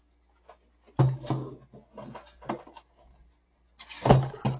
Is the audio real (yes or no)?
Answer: yes